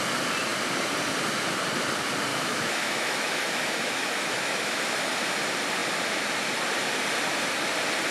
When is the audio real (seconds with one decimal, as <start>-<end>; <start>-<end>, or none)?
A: 0.0-2.3; 4.8-8.1